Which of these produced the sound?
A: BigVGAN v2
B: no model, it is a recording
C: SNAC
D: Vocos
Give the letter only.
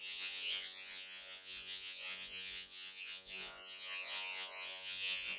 D